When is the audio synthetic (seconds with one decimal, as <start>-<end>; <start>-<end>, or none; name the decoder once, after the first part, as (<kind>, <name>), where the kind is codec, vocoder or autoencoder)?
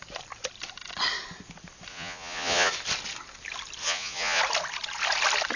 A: 1.9-2.7 (vocoder, Vocos); 3.8-4.4